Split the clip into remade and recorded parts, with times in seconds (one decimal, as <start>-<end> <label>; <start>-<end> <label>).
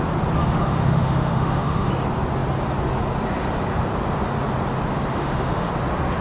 0.0-0.4 recorded; 0.4-1.9 remade; 1.9-5.1 recorded; 5.1-5.7 remade; 5.7-6.2 recorded